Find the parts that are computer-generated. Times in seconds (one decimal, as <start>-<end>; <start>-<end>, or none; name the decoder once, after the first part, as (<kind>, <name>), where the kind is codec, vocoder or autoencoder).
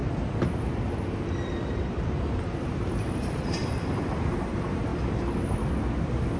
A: 2.6-4.9 (vocoder, BigVGAN v2)